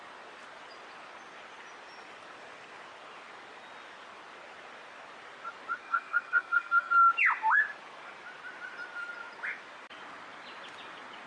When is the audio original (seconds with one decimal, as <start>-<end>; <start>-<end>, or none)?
0.0-5.8; 6.9-11.3